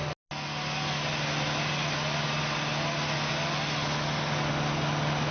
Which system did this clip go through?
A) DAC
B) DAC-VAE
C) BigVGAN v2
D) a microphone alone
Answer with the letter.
D